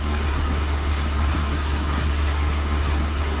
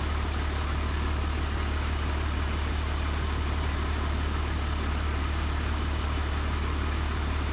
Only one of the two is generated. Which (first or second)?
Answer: first